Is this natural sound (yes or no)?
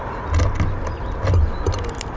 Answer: yes